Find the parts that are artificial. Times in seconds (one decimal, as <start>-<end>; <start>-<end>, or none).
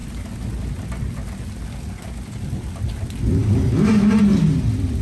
none